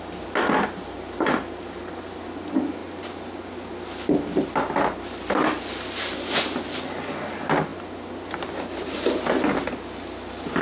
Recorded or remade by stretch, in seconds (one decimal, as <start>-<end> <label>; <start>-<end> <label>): 0.0-10.6 recorded